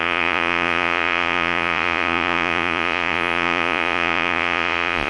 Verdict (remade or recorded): remade